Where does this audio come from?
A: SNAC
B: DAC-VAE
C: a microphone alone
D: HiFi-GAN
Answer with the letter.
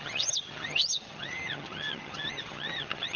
D